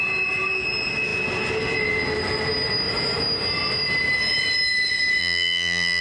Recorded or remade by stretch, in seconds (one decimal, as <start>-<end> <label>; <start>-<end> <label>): 0.0-5.2 recorded; 5.2-6.0 remade